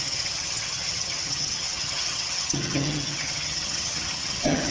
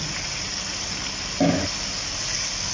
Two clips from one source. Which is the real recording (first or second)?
second